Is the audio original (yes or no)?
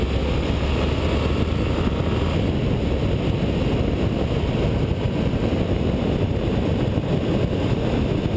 yes